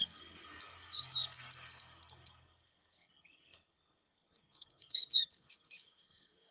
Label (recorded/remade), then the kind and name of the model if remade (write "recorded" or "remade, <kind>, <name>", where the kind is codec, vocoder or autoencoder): remade, codec, SNAC